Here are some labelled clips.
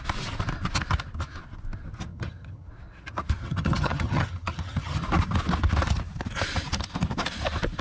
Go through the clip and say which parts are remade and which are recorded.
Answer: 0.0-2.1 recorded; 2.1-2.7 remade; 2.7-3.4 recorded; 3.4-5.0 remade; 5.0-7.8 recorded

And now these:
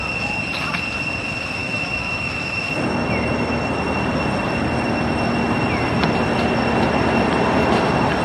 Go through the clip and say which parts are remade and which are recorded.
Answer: 0.0-1.6 recorded; 1.6-2.6 remade; 2.6-8.2 recorded

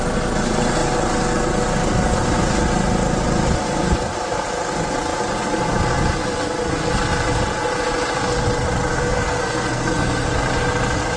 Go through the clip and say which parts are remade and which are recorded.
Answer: 0.0-8.9 recorded; 8.9-10.3 remade; 10.3-11.2 recorded

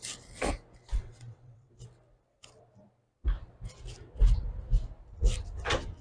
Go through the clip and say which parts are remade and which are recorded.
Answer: 0.0-0.9 recorded; 0.9-1.7 remade; 1.7-6.0 recorded

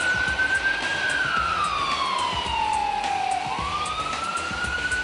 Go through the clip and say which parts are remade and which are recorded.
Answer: 0.0-2.8 remade; 2.8-4.2 recorded; 4.2-5.0 remade

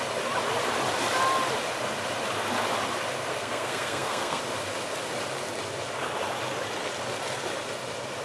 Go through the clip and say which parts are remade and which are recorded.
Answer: 0.0-3.3 recorded; 3.3-4.4 remade; 4.4-8.2 recorded